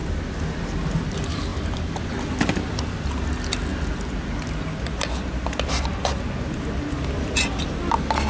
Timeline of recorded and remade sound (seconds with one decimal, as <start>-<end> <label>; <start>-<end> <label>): 0.0-8.3 recorded